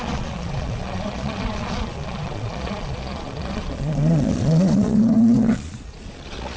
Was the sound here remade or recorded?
remade